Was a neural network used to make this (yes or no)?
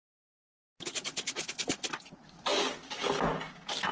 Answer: no